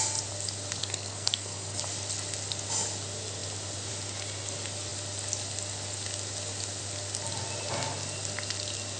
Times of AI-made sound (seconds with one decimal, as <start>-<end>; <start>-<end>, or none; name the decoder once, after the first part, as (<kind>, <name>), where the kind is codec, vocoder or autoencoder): 0.8-1.8 (codec, SNAC)